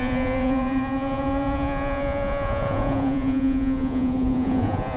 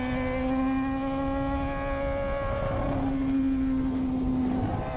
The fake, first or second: first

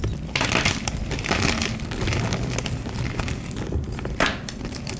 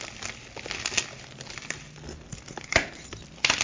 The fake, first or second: first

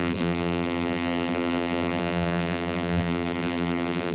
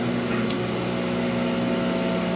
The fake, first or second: first